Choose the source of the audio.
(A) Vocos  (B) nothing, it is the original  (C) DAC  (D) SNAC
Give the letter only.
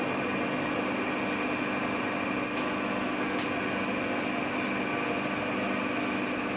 B